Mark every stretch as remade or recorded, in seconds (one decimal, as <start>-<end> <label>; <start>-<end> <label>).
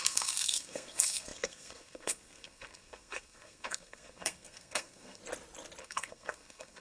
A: 0.0-5.2 remade; 5.2-5.8 recorded; 5.8-6.8 remade